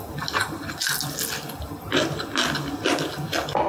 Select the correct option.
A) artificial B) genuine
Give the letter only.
B